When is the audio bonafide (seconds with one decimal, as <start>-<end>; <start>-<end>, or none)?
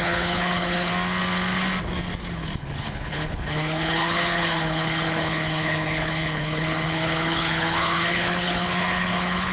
0.9-2.3